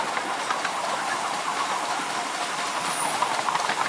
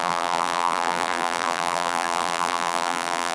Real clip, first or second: first